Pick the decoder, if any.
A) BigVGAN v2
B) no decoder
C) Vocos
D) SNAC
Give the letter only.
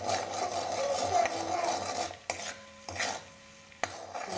B